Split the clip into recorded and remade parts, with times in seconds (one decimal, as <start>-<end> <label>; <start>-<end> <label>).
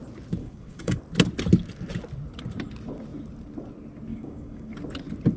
0.0-0.4 recorded; 0.4-1.0 remade; 1.0-4.1 recorded; 4.1-4.7 remade; 4.7-5.4 recorded